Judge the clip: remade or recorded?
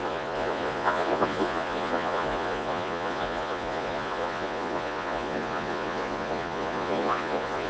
remade